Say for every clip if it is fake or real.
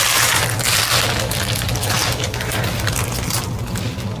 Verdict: real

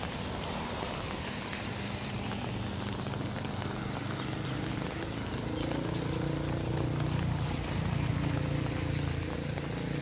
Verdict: real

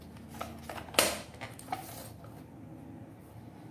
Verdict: real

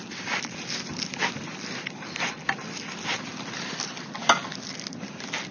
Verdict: real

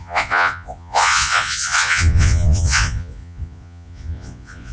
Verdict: fake